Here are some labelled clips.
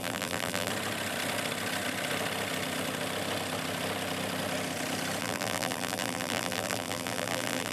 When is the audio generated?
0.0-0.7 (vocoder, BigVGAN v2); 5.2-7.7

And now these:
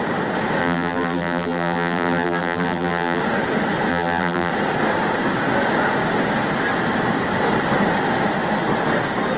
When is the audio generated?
0.6-3.2 (vocoder, BigVGAN v2); 3.9-4.5

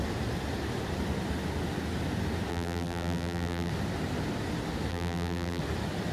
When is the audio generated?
2.5-3.7 (vocoder, BigVGAN v2); 4.9-5.6

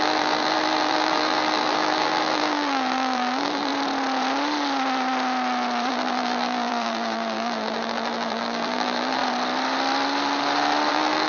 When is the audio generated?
0.0-3.7 (vocoder, BigVGAN v2); 5.9-9.2; 10.9-11.3

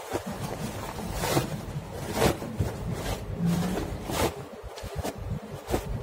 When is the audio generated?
0.0-6.0 (vocoder, BigVGAN v2)

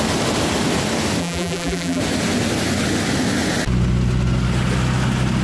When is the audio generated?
1.2-2.0 (vocoder, BigVGAN v2)